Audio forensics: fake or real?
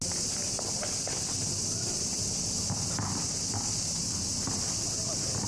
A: real